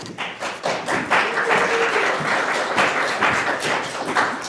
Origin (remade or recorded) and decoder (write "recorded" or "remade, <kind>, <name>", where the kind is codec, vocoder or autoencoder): recorded